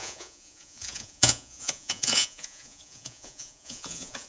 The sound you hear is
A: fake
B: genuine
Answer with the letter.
A